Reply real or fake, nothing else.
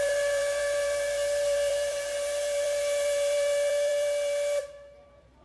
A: fake